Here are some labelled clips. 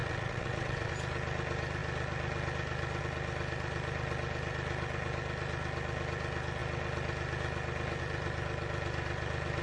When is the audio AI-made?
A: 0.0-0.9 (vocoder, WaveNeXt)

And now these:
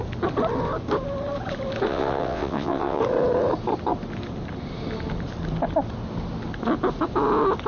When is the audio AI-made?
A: 1.9-3.0 (vocoder, WaveNeXt)

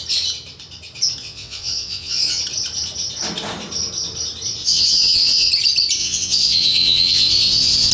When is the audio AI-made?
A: 1.2-2.4 (vocoder, WaveNeXt); 4.6-5.5; 6.0-7.9

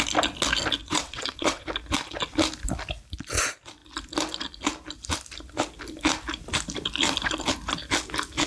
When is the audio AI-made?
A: 0.8-1.7 (vocoder, WaveNeXt)

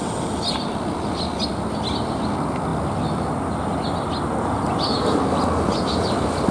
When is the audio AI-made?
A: none

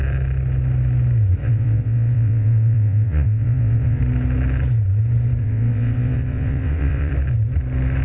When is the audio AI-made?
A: 1.4-4.0 (vocoder, WaveNeXt); 5.4-7.1

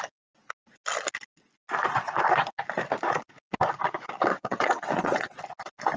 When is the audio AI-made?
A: 4.3-5.4 (vocoder, WaveNeXt)

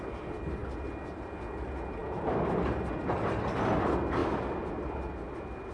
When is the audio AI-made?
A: none